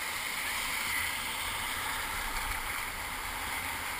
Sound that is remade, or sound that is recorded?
recorded